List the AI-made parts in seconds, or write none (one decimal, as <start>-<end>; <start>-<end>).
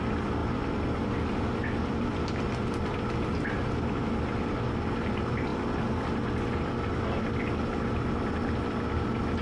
none